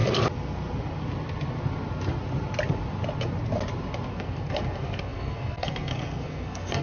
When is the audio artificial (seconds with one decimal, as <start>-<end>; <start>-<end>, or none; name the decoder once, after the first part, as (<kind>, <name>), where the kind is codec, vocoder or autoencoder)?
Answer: 4.1-6.8 (codec, SNAC)